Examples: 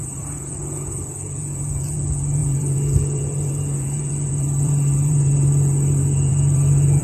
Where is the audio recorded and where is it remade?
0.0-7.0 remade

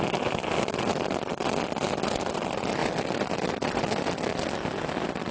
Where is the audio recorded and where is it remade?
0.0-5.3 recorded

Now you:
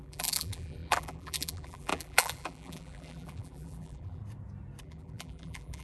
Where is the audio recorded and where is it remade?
0.0-4.2 remade; 4.2-4.8 recorded; 4.8-5.8 remade

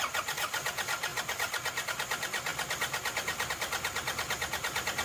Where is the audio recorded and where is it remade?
0.0-5.0 recorded

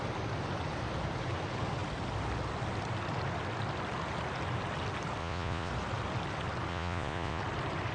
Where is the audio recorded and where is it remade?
0.0-5.2 recorded; 5.2-5.7 remade; 5.7-6.7 recorded; 6.7-7.4 remade; 7.4-7.9 recorded

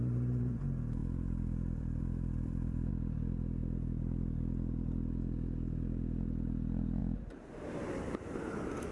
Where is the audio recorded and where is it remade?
0.0-1.0 recorded; 1.0-2.9 remade; 2.9-8.9 recorded

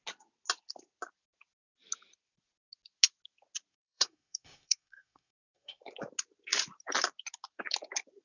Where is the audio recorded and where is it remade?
0.0-3.7 recorded; 3.7-5.8 remade; 5.8-8.2 recorded

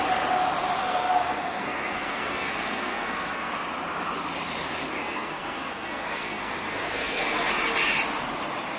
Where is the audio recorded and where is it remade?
0.0-0.8 recorded; 0.8-3.5 remade; 3.5-5.0 recorded; 5.0-7.5 remade; 7.5-8.8 recorded